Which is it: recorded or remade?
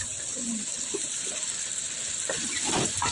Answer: recorded